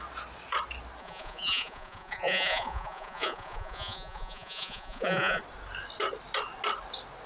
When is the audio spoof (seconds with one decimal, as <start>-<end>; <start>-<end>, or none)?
1.0-5.4